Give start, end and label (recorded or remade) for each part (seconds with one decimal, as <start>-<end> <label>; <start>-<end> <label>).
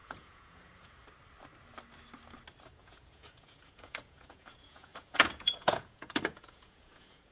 0.0-1.0 remade; 1.0-2.8 recorded; 2.8-7.3 remade